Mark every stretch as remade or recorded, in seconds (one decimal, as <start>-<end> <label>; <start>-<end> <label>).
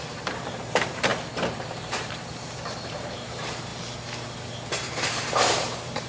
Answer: 0.0-1.1 remade; 1.1-1.8 recorded; 1.8-3.7 remade; 3.7-4.7 recorded; 4.7-6.1 remade